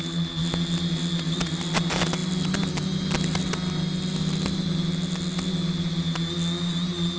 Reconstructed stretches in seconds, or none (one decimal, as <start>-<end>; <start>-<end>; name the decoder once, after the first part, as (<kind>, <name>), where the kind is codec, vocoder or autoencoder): none